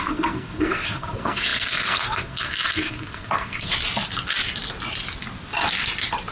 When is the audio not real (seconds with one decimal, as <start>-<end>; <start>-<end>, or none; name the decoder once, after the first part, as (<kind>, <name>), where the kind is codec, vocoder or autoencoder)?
0.0-3.7 (codec, SNAC)